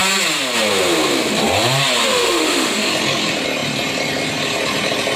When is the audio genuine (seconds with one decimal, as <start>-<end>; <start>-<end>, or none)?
0.0-2.0; 2.9-5.2